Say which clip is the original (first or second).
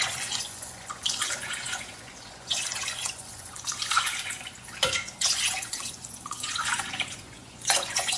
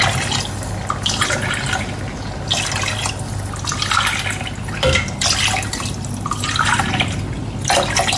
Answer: second